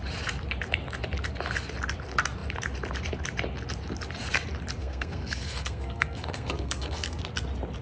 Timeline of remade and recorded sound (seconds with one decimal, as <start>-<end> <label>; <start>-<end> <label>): 0.0-4.8 recorded; 4.8-7.2 remade; 7.2-7.8 recorded